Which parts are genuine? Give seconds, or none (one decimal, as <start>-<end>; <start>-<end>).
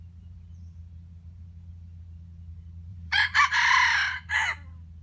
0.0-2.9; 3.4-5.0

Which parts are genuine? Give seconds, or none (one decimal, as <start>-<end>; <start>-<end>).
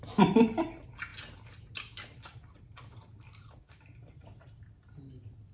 0.0-5.5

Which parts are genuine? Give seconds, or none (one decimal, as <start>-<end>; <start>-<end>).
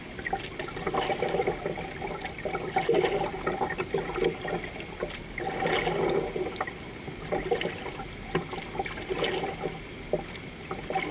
0.0-11.1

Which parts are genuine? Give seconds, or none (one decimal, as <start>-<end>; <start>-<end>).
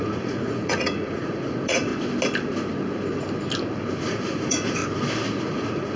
1.9-4.0; 4.8-5.4